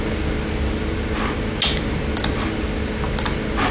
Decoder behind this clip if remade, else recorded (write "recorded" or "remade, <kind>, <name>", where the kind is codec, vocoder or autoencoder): recorded